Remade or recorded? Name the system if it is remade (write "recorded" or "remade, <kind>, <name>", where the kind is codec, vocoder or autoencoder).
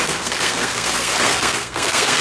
remade, codec, SNAC